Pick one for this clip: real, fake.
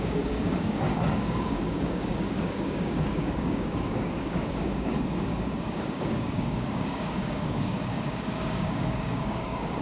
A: fake